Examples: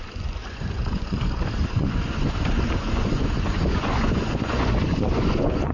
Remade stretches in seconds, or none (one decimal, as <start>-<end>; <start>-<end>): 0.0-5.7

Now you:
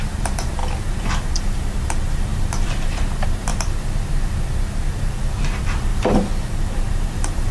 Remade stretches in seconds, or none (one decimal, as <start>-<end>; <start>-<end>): 0.0-0.6; 1.4-3.5; 5.4-5.9; 6.9-7.5

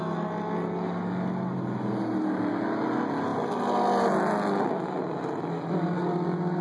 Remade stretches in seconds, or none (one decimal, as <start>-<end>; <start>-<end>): none

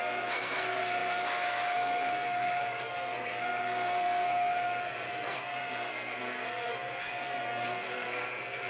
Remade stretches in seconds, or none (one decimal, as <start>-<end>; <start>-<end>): 0.0-8.7